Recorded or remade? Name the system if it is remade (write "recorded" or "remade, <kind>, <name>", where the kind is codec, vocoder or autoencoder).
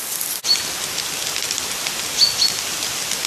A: recorded